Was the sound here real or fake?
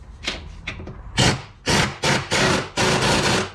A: real